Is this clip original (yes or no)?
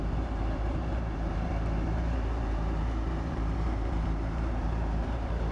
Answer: no